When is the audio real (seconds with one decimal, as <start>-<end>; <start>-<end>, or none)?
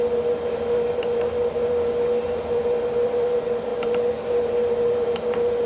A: 0.0-5.7